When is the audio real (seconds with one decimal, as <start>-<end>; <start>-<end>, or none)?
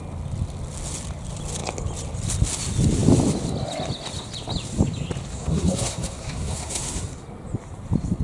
0.0-5.3; 7.0-8.2